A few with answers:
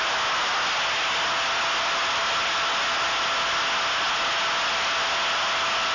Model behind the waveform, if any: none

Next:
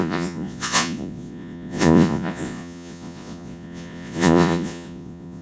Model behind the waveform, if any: vocoder, Vocos